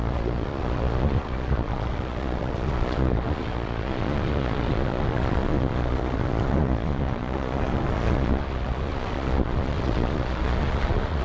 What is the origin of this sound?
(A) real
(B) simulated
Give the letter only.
B